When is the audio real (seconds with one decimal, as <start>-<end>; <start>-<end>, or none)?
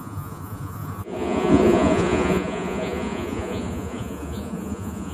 none